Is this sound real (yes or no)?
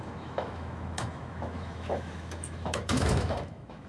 no